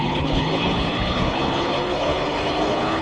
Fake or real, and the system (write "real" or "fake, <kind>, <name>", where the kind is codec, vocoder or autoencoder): fake, codec, HILCodec